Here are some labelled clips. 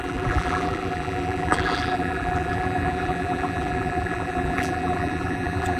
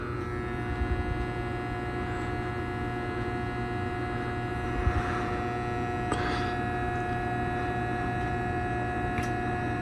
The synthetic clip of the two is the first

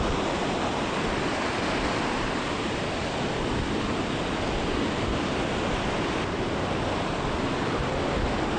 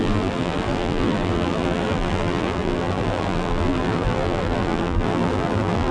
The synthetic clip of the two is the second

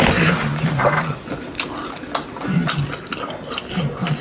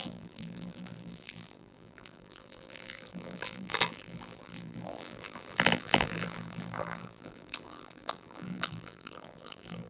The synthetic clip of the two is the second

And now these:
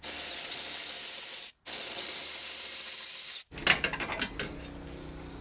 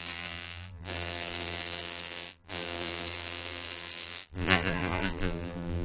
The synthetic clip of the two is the second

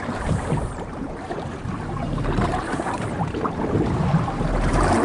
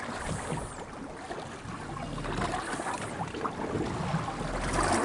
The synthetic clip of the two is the first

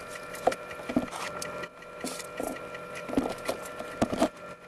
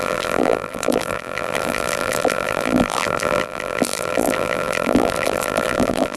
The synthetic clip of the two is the second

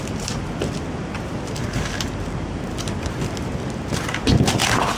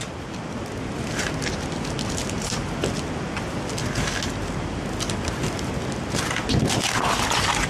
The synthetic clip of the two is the first